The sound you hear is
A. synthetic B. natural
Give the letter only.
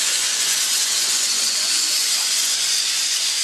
A